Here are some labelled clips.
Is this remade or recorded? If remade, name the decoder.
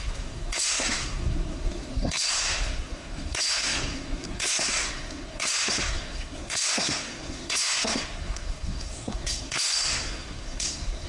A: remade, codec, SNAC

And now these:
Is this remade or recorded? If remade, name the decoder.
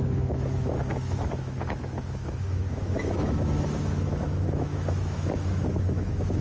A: remade, autoencoder, DAC-VAE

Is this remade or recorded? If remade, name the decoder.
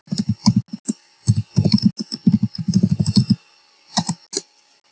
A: recorded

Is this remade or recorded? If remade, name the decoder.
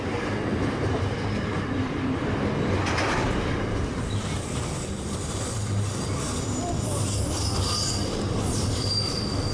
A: remade, vocoder, BigVGAN v2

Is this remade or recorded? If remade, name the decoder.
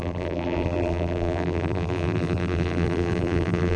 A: remade, vocoder, BigVGAN v2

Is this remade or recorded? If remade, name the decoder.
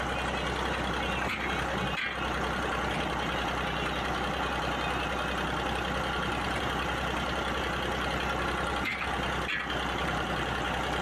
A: recorded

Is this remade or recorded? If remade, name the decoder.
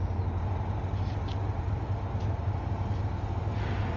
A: recorded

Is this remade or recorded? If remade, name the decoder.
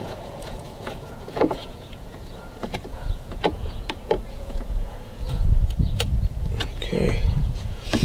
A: remade, vocoder, Vocos